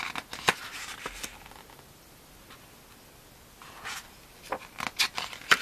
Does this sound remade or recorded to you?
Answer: recorded